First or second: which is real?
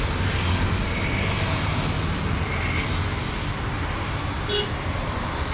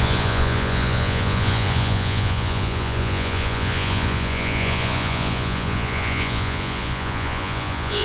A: first